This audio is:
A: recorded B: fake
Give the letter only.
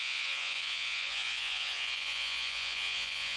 B